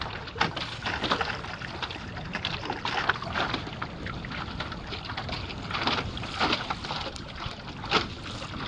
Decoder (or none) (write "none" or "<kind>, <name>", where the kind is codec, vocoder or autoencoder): none